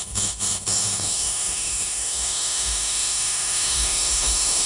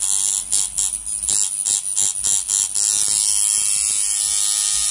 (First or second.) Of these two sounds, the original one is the second